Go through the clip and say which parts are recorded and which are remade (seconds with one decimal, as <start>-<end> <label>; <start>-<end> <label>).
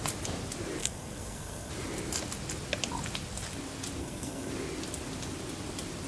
0.0-0.8 recorded; 0.8-1.7 remade; 1.7-4.0 recorded; 4.0-4.5 remade; 4.5-6.1 recorded